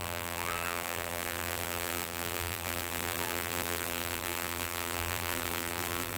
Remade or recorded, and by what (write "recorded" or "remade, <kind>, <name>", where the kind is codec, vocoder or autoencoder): remade, vocoder, BigVGAN v2